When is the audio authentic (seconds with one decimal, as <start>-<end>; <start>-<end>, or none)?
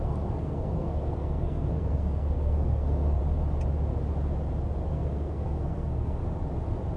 3.2-4.9; 6.2-7.0